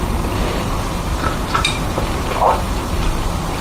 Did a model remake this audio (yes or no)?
yes